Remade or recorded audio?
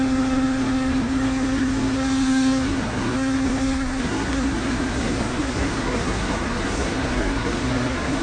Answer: remade